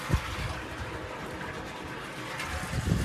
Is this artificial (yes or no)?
no